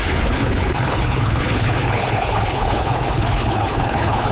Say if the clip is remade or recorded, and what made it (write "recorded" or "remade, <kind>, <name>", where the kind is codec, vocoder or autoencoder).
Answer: remade, codec, HILCodec